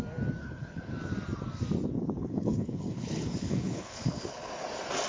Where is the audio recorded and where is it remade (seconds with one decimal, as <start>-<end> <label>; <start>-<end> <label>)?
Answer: 0.0-0.4 recorded; 0.4-0.9 remade; 0.9-2.2 recorded; 2.2-4.5 remade; 4.5-5.1 recorded